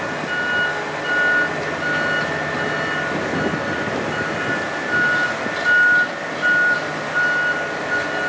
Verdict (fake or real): real